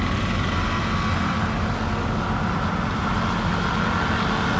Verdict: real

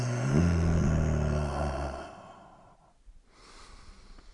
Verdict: real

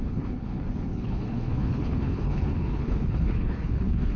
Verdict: fake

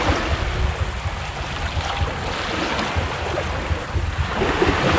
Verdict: real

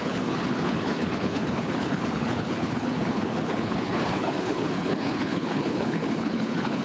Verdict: fake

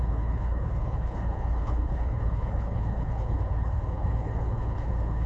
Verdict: fake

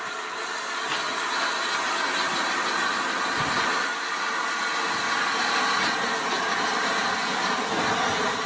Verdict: real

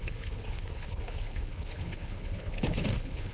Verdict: fake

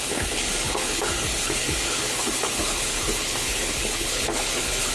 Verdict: fake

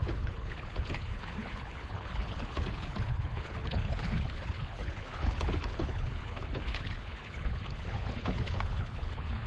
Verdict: fake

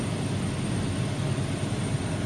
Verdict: real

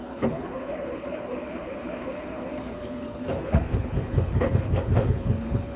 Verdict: fake